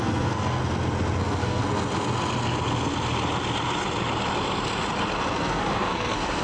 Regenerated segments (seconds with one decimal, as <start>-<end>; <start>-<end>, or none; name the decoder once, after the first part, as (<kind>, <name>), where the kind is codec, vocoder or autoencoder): 0.0-0.6 (codec, SNAC); 1.2-1.6; 5.3-6.4